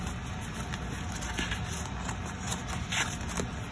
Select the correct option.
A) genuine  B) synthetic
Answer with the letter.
A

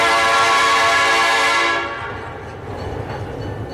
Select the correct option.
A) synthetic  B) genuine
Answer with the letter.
B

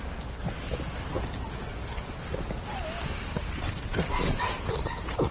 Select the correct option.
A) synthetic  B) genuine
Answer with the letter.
B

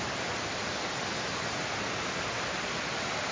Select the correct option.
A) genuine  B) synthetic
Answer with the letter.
A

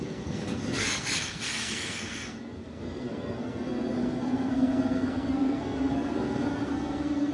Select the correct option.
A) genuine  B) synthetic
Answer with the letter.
B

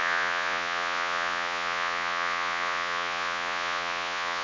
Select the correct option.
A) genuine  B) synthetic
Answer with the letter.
B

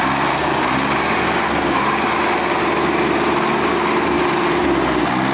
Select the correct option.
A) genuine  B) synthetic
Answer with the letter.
A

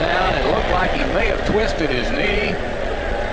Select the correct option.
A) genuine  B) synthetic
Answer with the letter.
B